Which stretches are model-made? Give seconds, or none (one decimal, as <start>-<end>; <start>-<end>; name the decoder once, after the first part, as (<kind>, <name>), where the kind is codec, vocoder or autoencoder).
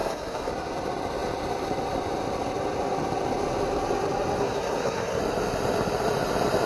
0.0-0.5 (codec, SNAC); 4.4-5.2